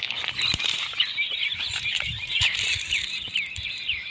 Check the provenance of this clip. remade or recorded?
remade